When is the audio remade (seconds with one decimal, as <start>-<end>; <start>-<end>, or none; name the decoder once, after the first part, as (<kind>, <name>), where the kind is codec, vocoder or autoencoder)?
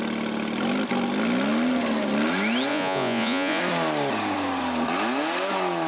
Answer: 2.7-3.6 (vocoder, Vocos)